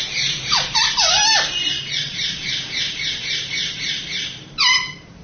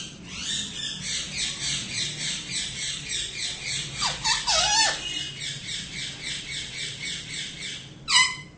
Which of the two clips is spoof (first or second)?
first